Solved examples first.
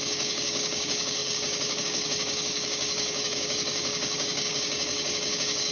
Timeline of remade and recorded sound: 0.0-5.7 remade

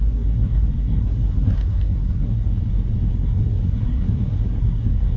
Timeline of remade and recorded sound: 0.0-2.5 remade; 2.5-3.1 recorded; 3.1-5.2 remade

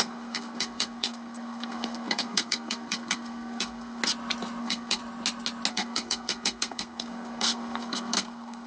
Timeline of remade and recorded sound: 0.0-4.0 remade; 4.0-4.6 recorded; 4.6-5.0 remade; 5.0-5.7 recorded; 5.7-8.7 remade

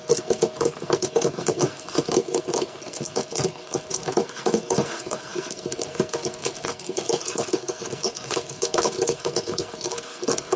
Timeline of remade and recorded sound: 0.0-10.6 remade

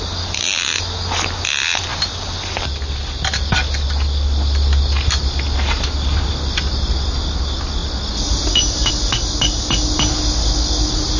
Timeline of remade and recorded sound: 0.0-11.2 recorded

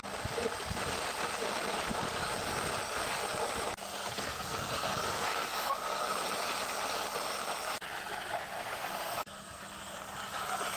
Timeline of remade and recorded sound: 0.0-3.9 recorded; 3.9-6.0 remade; 6.0-8.5 recorded; 8.5-9.6 remade; 9.6-10.8 recorded